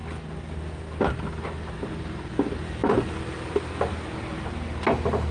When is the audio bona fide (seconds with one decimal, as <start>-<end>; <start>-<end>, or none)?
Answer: 0.0-5.3

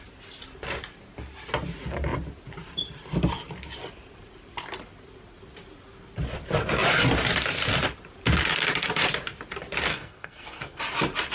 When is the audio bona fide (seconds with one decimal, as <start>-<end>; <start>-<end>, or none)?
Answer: 0.0-9.9; 10.8-11.3